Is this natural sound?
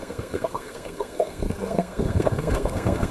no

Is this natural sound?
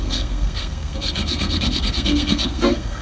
no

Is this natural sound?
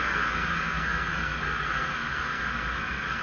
no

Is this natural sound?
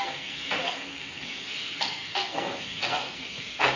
no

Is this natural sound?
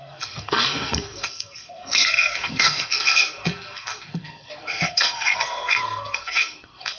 no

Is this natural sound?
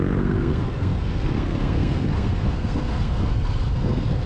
no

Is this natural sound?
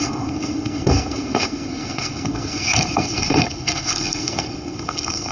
no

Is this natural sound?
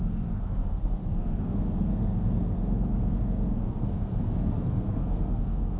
no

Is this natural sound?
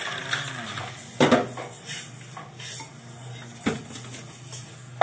yes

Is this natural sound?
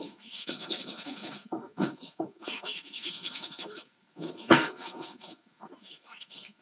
no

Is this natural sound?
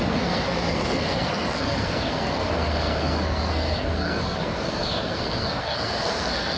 no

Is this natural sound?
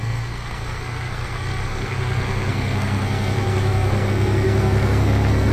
no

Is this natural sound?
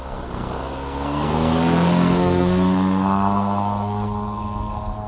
no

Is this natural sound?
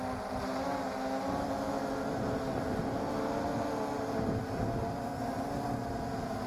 yes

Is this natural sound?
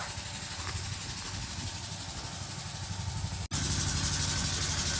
yes